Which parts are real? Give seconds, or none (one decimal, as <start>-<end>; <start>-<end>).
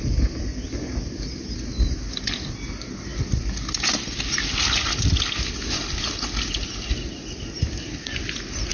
0.0-8.7